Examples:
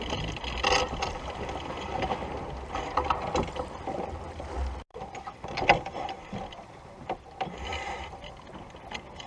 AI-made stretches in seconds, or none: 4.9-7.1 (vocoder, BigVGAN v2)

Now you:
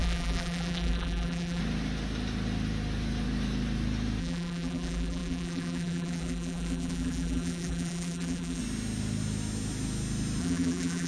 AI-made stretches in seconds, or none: 0.0-1.6 (vocoder, BigVGAN v2); 4.2-8.6; 10.4-11.1

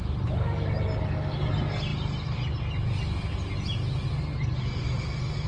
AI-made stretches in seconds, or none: none

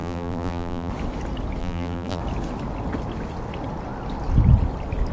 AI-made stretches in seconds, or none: 0.0-0.9 (vocoder, BigVGAN v2); 1.6-2.2